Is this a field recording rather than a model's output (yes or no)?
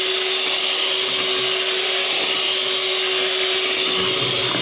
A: yes